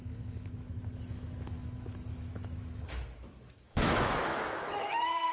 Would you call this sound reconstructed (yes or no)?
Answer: yes